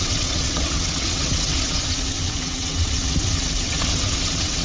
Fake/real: fake